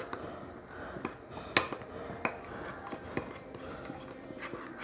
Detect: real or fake real